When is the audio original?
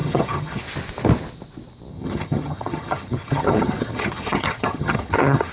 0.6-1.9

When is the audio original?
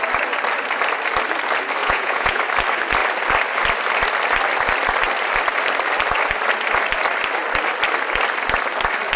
0.0-1.8; 2.4-9.2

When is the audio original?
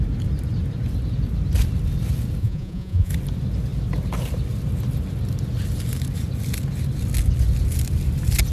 0.0-2.4; 3.1-8.5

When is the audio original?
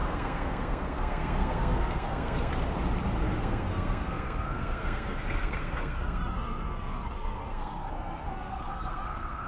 2.5-3.4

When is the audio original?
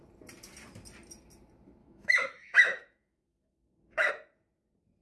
0.0-1.8; 4.1-5.0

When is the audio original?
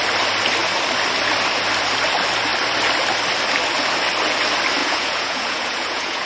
0.0-4.8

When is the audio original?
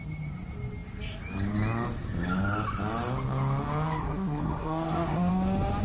0.0-4.0; 5.3-5.8